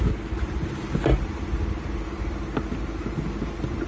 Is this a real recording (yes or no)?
yes